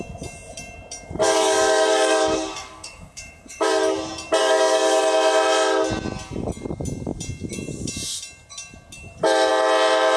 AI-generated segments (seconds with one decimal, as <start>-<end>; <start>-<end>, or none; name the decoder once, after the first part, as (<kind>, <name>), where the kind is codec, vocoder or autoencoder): 1.2-3.7 (codec, DAC); 4.4-5.0